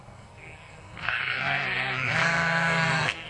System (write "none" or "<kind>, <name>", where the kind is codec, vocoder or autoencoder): codec, SNAC